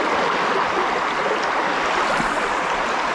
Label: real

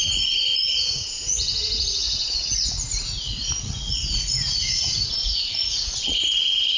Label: fake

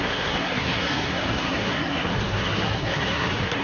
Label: fake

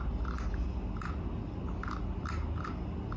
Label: real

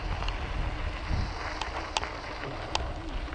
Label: real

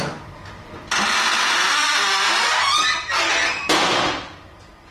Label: real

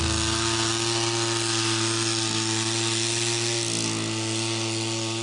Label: real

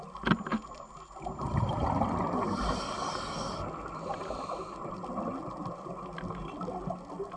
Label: real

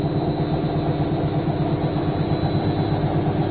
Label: real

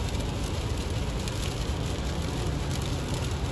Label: real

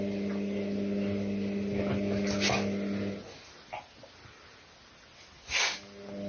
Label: real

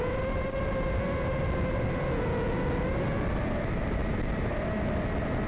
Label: real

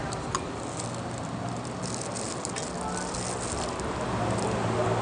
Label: fake